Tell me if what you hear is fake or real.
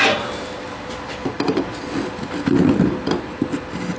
real